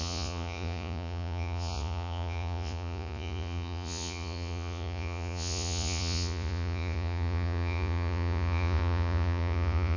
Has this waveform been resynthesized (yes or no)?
yes